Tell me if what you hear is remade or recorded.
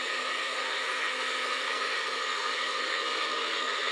remade